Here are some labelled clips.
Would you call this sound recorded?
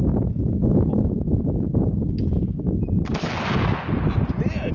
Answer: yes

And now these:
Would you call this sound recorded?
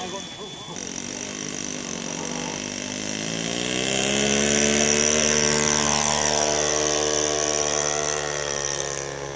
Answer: yes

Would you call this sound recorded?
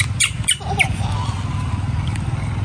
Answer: yes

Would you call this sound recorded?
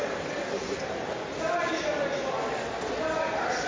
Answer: yes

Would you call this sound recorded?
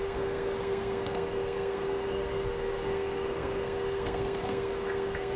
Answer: no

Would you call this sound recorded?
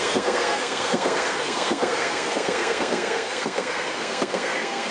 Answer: no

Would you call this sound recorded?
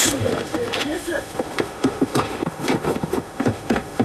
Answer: no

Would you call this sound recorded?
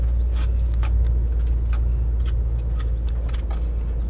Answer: yes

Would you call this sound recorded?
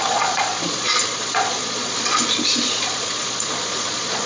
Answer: no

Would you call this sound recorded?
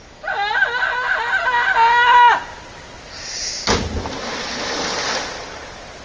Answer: yes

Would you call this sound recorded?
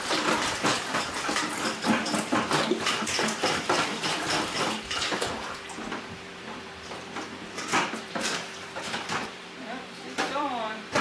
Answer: no